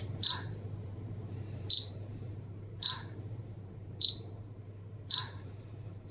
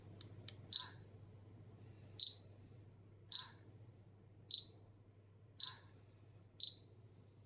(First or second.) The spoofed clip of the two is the first